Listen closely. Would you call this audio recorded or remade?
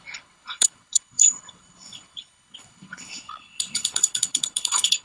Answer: remade